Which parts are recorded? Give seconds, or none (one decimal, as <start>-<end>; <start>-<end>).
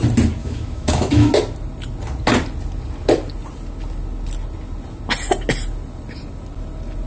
0.0-0.4; 1.3-7.1